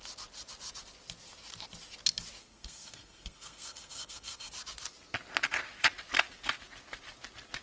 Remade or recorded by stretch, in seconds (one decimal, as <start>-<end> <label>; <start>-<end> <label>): 0.0-2.4 recorded; 2.4-4.5 remade; 4.5-7.6 recorded